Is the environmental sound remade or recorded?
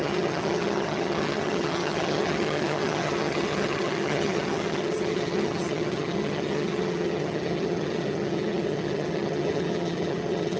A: remade